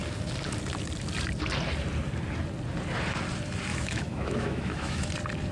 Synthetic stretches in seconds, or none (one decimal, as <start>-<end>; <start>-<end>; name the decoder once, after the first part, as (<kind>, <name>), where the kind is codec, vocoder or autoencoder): 3.7-5.1 (autoencoder, DAC-VAE)